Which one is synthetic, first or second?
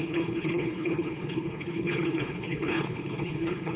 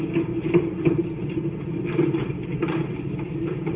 first